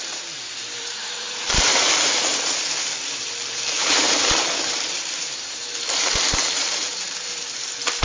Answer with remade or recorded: remade